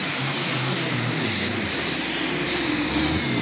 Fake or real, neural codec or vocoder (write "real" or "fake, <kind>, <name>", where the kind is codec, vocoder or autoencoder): real